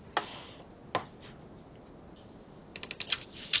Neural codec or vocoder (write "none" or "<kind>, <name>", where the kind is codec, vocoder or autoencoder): none